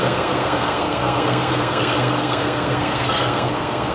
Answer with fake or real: fake